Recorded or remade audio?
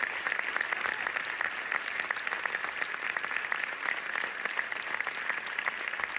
recorded